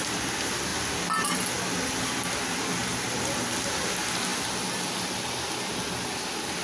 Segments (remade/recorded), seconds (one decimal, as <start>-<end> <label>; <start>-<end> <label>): 0.0-6.6 recorded